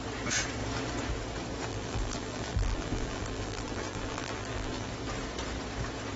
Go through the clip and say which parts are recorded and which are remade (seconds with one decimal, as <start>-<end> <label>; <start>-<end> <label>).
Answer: 0.0-1.7 recorded; 1.7-4.9 remade; 4.9-6.2 recorded